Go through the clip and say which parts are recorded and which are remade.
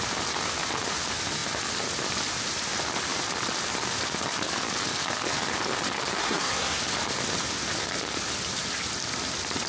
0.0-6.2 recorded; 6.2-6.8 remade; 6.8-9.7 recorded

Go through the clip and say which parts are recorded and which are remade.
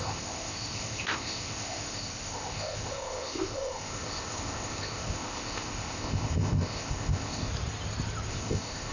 0.0-7.5 remade; 7.5-8.3 recorded; 8.3-8.9 remade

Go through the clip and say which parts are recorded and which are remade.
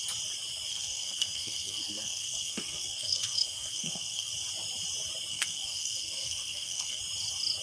0.0-0.7 recorded; 0.7-4.3 remade; 4.3-5.3 recorded; 5.3-7.0 remade; 7.0-7.6 recorded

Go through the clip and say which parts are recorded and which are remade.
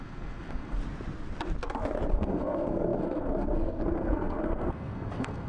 0.0-0.8 remade; 0.8-2.1 recorded; 2.1-5.5 remade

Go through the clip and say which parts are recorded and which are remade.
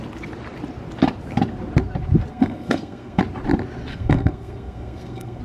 0.0-2.3 recorded; 2.3-3.2 remade; 3.2-3.9 recorded; 3.9-5.4 remade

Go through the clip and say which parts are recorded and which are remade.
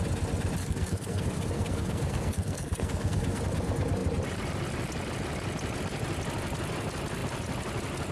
0.0-0.6 recorded; 0.6-3.4 remade; 3.4-8.1 recorded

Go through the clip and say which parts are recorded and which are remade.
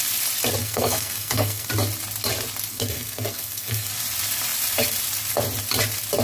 0.0-0.6 recorded; 0.6-1.7 remade; 1.7-2.7 recorded; 2.7-3.9 remade; 3.9-6.2 recorded